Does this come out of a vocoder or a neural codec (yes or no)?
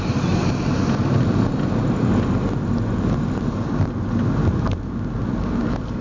no